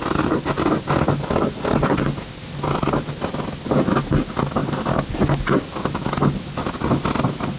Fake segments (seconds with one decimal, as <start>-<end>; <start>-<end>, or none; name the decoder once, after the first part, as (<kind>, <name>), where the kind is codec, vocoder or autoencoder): none